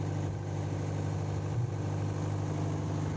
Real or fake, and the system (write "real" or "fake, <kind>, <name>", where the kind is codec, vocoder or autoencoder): real